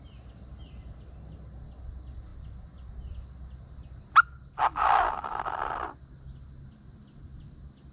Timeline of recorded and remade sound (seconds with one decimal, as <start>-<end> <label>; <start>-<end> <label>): 0.0-7.9 recorded